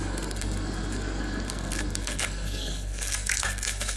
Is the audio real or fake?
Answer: fake